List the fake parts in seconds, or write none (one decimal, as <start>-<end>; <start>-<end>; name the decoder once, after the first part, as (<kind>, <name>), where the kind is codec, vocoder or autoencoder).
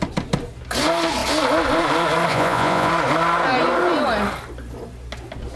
2.3-2.9 (vocoder, Vocos)